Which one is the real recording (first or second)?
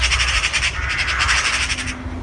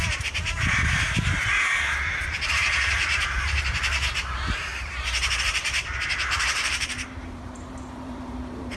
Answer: first